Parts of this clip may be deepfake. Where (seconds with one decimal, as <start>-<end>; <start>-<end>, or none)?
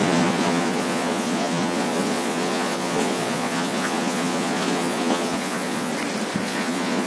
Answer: 0.0-5.9; 6.4-7.1